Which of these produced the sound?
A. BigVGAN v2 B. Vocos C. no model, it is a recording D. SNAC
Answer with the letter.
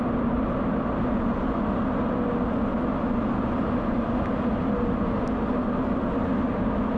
C